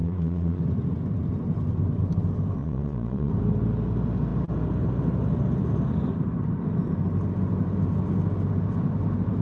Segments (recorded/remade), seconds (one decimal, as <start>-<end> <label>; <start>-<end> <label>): 0.0-0.6 remade; 0.6-2.6 recorded; 2.6-3.3 remade; 3.3-9.4 recorded